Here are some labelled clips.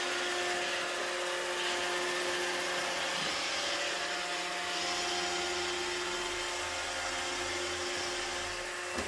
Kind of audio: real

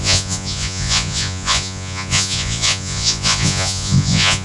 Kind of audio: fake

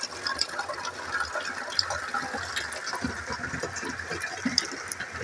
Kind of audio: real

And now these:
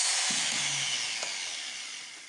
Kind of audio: real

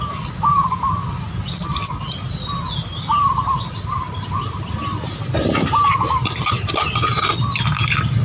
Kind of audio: real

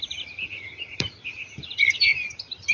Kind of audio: fake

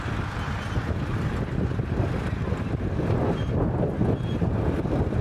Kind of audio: real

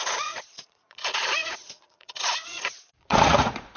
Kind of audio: fake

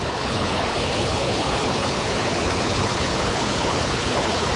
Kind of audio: fake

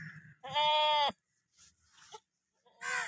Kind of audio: real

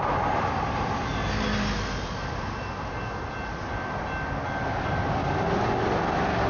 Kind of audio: real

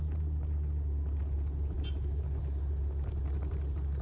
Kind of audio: real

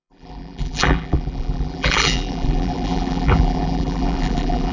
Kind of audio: fake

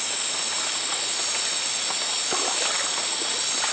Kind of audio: real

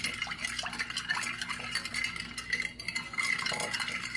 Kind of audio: real